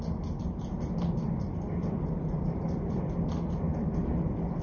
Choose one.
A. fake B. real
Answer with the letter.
B